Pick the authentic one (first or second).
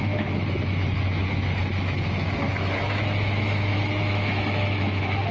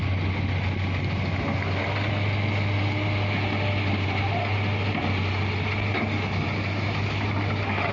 second